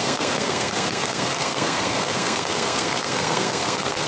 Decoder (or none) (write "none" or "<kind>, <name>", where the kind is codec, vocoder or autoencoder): codec, SNAC